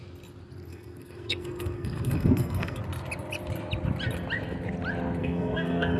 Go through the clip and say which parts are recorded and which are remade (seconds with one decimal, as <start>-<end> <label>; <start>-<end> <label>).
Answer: 0.0-0.7 recorded; 0.7-2.8 remade; 2.8-5.2 recorded; 5.2-6.0 remade